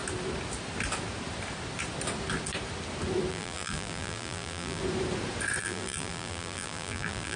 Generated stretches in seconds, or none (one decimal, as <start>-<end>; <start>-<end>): 3.3-4.8; 5.6-7.4